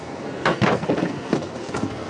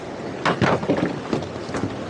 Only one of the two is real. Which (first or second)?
second